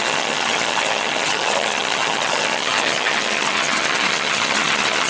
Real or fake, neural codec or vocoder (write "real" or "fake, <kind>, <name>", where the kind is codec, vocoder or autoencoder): fake, vocoder, HiFi-GAN